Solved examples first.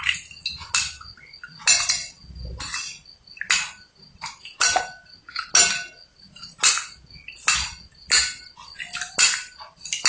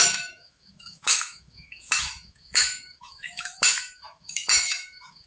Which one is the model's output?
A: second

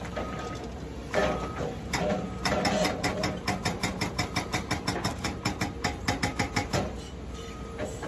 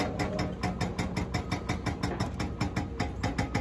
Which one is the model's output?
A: first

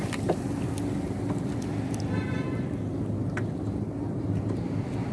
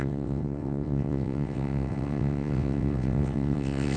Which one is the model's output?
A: second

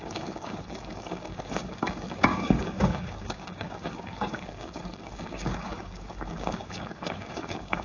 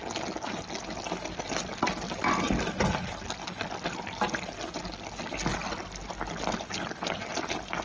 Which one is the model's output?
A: first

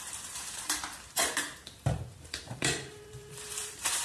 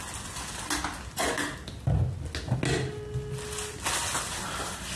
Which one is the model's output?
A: first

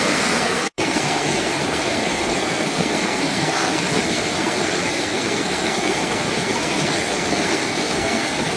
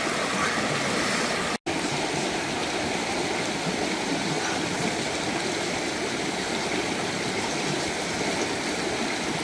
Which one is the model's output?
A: first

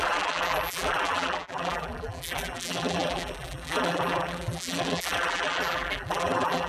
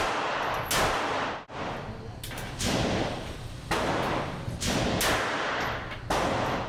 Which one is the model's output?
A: first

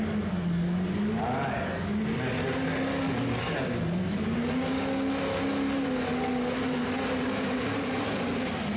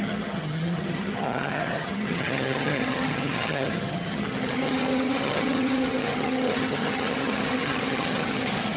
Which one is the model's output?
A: second